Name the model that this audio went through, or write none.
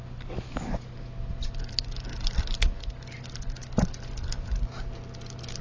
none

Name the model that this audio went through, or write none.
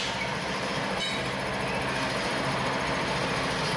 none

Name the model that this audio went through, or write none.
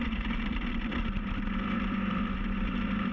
vocoder, BigVGAN v2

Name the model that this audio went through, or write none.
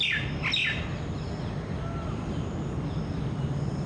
none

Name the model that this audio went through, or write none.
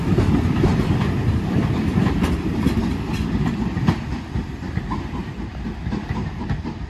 vocoder, BigVGAN v2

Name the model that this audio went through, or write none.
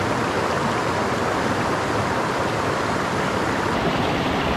none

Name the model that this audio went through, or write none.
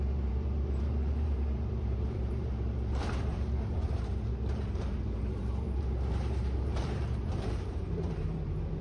vocoder, BigVGAN v2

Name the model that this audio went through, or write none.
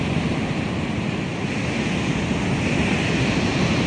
none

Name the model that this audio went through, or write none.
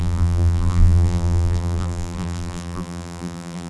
vocoder, BigVGAN v2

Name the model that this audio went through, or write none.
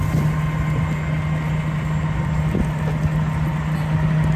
none